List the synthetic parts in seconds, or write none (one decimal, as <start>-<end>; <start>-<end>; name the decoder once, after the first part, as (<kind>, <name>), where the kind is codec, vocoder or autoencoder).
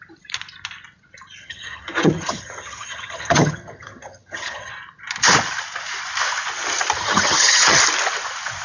1.4-4.7 (vocoder, HiFi-GAN); 7.0-7.8